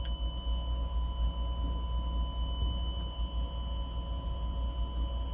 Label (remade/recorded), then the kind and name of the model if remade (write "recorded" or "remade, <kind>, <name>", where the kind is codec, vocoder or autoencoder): recorded